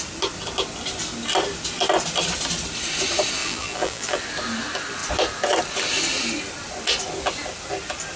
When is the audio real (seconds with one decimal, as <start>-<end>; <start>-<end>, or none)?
0.0-3.4; 4.2-8.2